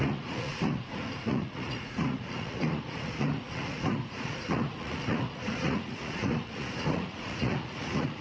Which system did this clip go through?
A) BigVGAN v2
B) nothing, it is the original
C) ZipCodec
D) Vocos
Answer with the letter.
D